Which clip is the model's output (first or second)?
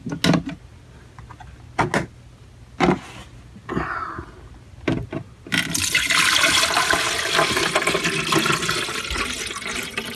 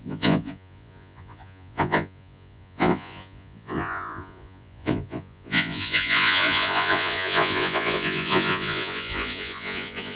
second